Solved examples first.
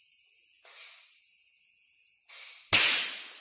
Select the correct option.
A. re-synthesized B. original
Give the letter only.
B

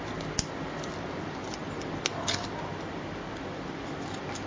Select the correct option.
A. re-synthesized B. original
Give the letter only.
B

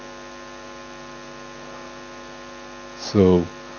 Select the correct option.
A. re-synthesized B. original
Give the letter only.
B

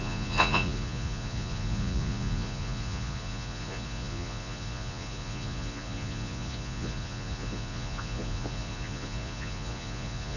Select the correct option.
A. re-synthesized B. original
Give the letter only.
A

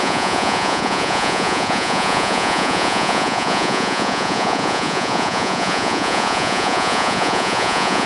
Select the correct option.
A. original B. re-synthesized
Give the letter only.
B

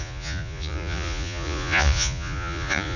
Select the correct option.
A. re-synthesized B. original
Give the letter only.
A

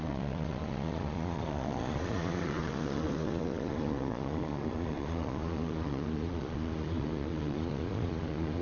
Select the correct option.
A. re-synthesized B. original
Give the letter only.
A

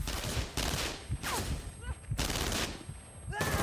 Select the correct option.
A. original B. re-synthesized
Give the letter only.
A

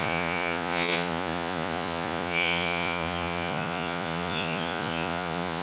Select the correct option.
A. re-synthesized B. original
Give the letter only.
A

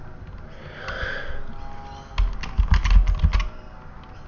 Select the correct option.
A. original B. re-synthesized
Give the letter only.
A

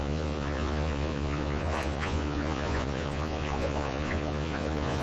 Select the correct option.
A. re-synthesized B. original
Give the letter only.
A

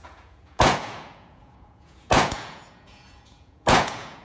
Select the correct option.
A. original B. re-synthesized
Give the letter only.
B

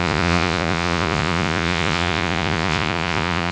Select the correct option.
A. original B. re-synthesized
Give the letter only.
B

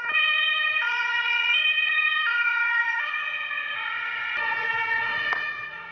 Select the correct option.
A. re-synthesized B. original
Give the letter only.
A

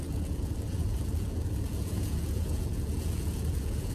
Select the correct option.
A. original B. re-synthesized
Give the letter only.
B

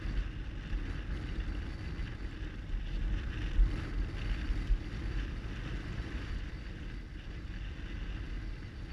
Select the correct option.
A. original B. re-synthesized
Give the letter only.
A